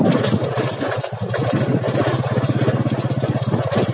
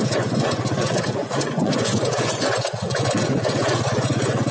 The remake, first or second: second